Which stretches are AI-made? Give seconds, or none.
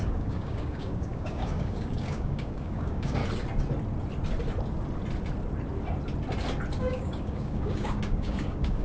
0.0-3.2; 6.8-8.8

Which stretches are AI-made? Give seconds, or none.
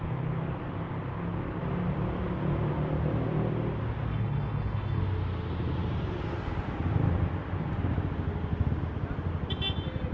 4.1-5.0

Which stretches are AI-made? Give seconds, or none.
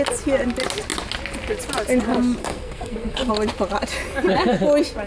2.4-3.3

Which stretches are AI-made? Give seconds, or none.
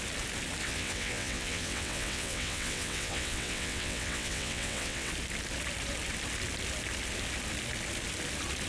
0.6-5.1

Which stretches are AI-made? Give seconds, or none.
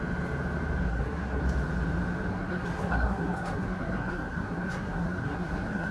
0.9-1.4; 2.3-5.9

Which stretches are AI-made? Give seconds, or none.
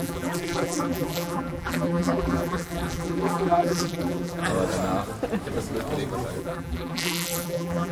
0.0-4.5; 6.4-7.9